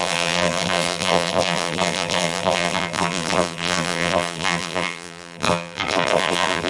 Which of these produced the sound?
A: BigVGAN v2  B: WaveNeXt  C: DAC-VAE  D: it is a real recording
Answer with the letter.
A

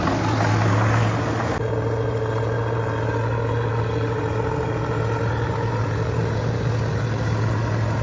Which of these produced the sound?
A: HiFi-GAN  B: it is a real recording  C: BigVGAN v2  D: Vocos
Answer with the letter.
B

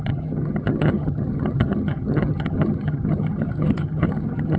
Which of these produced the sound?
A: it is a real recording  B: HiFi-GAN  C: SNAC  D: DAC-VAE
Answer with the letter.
B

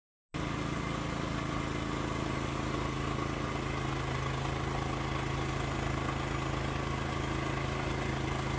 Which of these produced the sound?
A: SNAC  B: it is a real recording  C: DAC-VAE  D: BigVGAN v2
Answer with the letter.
B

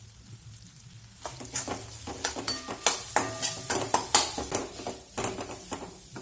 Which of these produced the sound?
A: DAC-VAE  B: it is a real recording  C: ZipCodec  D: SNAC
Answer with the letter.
B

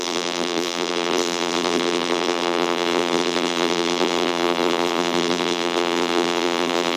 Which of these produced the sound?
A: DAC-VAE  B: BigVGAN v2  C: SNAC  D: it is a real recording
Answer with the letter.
B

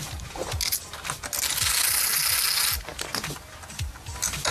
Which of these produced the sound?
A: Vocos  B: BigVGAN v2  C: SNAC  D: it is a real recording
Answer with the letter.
D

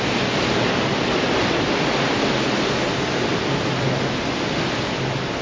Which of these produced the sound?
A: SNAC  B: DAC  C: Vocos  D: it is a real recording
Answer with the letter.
D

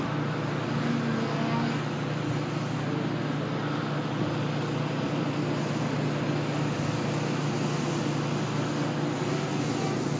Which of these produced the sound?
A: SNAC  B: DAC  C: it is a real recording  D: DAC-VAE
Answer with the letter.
C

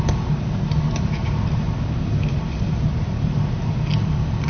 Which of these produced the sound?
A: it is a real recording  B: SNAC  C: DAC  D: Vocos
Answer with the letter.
A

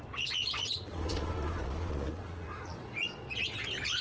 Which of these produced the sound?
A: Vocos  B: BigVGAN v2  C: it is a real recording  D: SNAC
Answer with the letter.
A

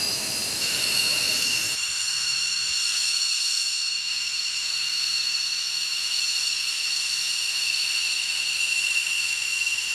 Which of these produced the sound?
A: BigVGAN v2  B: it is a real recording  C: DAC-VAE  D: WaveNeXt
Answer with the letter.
C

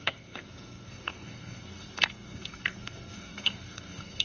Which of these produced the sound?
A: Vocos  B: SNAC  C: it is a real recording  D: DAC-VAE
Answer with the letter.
B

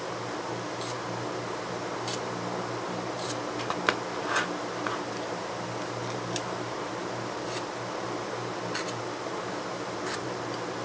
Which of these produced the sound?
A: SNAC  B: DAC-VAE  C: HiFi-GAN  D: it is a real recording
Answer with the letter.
D